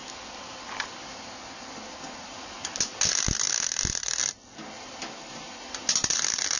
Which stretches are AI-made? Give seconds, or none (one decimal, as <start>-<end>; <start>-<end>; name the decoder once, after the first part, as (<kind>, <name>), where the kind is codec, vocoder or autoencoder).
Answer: none